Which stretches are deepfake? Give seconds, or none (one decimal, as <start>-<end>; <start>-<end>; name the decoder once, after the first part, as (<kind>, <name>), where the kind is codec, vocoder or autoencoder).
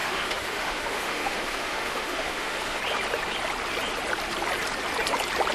0.0-2.8 (autoencoder, DAC-VAE)